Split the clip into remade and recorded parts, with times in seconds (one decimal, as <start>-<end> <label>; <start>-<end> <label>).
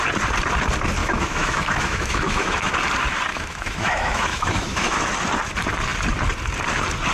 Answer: 0.0-1.0 recorded; 1.0-2.7 remade; 2.7-3.3 recorded; 3.3-5.0 remade; 5.0-7.1 recorded